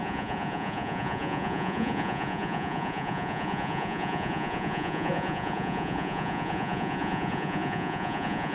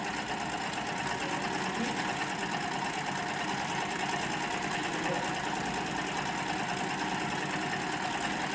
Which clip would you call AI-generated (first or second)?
first